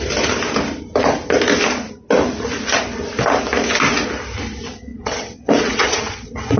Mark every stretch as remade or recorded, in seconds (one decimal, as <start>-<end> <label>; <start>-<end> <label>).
0.0-4.9 recorded; 4.9-6.6 remade